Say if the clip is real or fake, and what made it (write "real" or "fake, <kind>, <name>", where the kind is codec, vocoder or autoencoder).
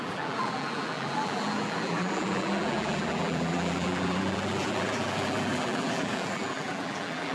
fake, vocoder, BigVGAN v2